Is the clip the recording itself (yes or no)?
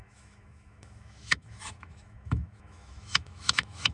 no